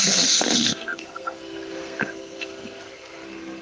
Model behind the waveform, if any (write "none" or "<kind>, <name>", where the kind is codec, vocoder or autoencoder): codec, SNAC